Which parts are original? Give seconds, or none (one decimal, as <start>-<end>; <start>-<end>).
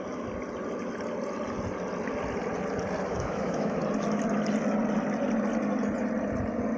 0.0-3.1; 3.8-6.8